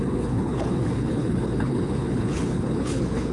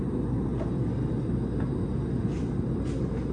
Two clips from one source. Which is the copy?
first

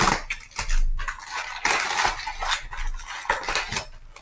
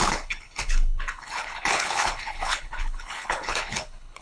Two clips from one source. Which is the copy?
second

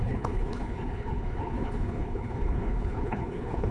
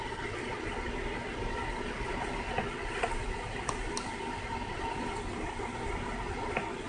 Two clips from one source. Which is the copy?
first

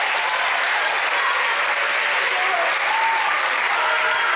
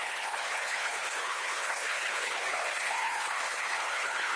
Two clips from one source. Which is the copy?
second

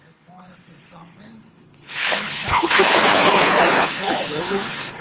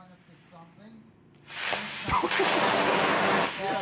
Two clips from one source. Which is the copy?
first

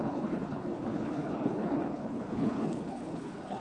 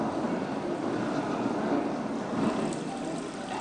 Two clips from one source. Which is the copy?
first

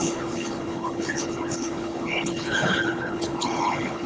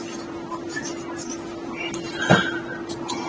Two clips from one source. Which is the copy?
first